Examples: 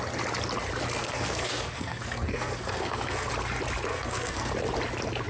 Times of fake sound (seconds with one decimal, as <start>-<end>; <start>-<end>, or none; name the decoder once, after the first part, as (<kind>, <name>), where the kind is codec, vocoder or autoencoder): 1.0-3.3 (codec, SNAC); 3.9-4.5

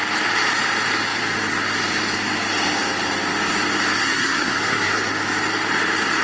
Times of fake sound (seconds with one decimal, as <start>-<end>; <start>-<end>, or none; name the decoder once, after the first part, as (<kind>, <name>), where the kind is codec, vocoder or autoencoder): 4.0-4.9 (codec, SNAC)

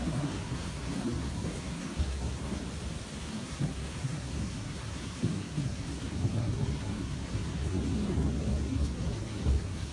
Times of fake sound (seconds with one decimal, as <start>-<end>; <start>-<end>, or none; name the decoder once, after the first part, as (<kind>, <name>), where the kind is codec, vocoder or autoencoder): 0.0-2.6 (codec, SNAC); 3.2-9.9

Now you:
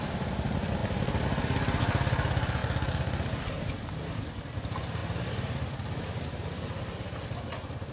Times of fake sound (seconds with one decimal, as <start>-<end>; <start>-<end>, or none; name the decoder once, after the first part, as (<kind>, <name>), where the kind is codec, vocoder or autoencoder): none

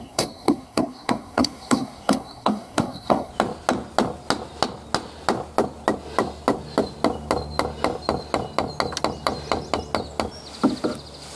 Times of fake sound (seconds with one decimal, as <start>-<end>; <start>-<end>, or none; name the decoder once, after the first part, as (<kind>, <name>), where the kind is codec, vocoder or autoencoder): 0.0-3.3 (codec, SNAC)

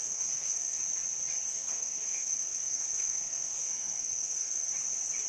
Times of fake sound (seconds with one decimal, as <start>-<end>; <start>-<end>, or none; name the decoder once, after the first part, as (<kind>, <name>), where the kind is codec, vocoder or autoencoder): 0.0-0.8 (codec, SNAC); 1.5-4.7